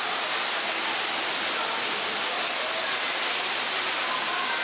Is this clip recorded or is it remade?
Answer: recorded